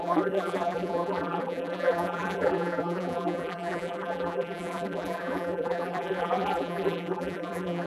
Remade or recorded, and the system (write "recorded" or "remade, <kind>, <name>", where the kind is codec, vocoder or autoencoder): remade, vocoder, BigVGAN v2